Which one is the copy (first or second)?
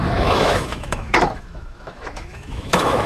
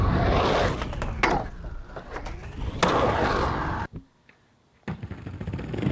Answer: first